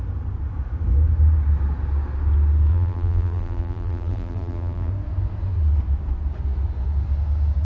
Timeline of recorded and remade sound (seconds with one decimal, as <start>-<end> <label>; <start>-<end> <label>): 0.0-2.7 recorded; 2.7-4.9 remade; 4.9-7.6 recorded